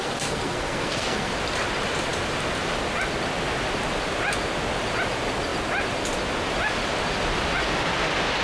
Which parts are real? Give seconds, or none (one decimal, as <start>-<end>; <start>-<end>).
1.3-8.4